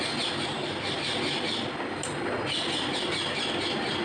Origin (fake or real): real